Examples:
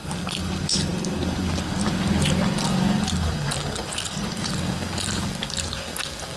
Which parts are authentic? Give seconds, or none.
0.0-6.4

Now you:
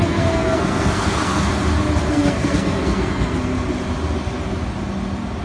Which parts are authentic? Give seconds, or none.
1.5-2.1; 3.5-5.4

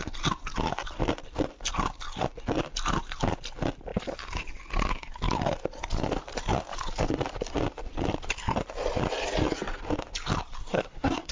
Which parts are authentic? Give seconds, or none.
0.0-10.6

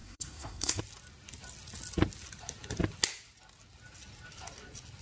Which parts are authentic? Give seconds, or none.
0.8-5.0

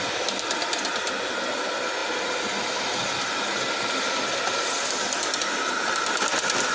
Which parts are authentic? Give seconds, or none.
0.0-6.7

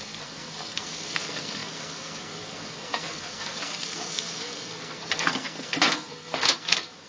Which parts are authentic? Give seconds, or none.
none

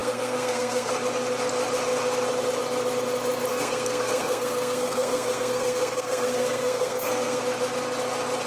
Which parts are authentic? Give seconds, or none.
0.9-3.5; 7.4-8.5

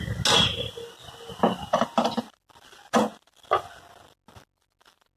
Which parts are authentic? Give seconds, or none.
0.0-5.2